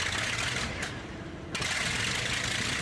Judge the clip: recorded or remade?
recorded